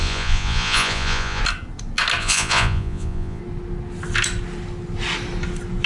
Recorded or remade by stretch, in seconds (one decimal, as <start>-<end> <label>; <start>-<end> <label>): 0.0-1.4 remade; 1.4-2.2 recorded; 2.2-3.4 remade; 3.4-5.9 recorded